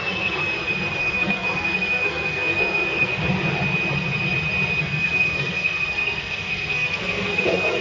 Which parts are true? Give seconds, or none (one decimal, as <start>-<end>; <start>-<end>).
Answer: 0.4-1.0; 3.1-4.8